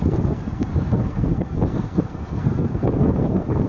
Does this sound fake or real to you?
fake